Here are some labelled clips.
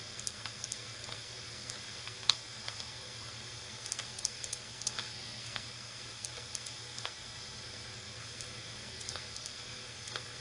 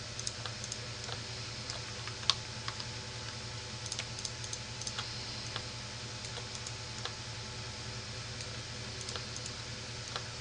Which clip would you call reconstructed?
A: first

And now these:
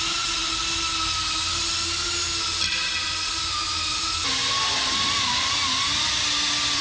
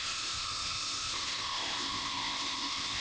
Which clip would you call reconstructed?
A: second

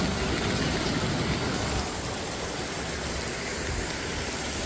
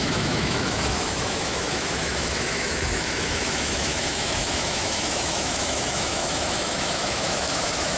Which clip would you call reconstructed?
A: second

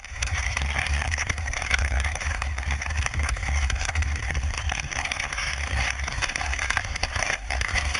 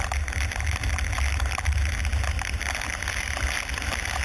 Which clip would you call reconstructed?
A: first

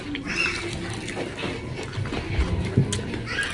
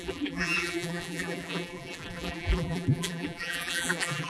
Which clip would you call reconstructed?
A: second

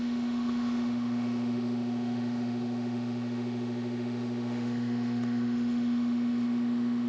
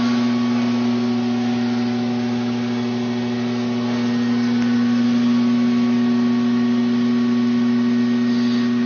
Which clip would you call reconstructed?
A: first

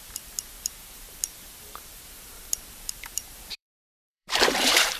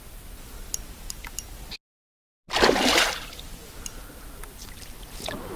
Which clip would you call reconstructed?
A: first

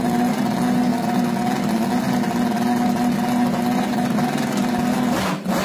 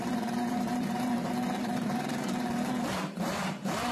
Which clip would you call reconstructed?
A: second